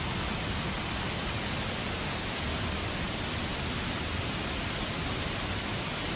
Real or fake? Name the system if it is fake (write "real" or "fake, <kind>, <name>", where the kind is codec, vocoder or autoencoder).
real